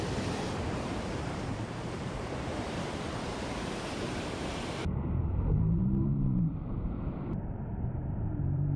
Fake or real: fake